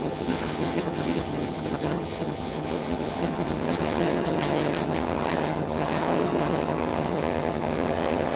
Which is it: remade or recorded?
remade